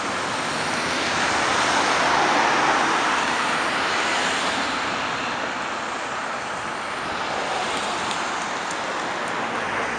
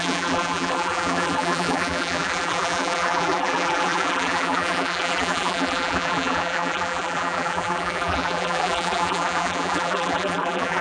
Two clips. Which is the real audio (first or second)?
first